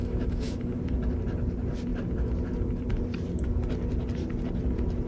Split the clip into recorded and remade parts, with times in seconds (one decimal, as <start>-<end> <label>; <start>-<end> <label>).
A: 0.0-0.8 remade; 0.8-5.1 recorded